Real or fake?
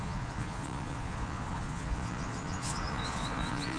fake